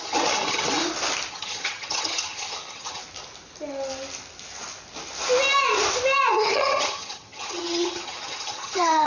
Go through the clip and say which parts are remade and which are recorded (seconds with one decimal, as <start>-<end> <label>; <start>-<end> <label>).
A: 0.0-0.8 remade; 0.8-1.3 recorded; 1.3-3.0 remade; 3.0-6.3 recorded; 6.3-9.1 remade